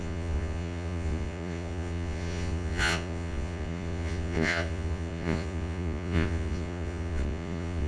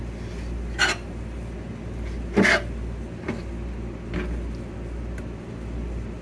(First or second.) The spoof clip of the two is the first